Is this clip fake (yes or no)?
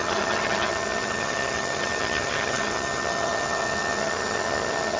yes